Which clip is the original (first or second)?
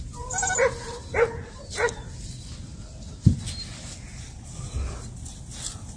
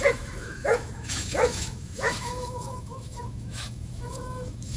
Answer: first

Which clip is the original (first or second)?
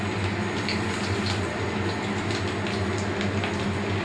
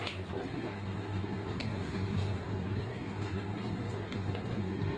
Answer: first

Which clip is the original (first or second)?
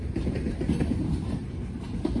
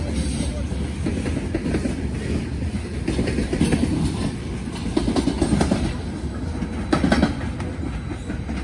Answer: second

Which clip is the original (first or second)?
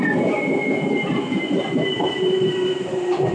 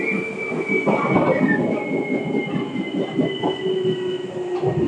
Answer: second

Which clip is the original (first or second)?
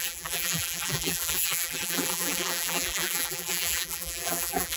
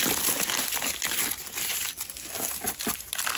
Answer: second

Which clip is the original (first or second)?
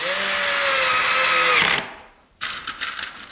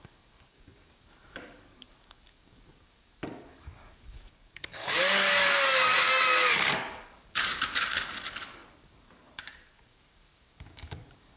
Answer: first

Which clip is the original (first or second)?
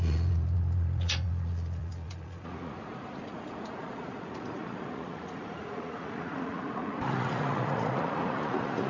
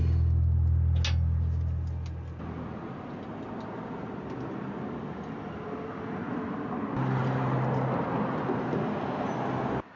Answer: second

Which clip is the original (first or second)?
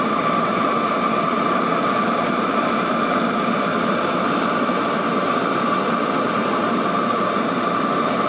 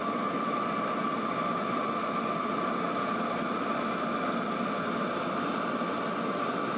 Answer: second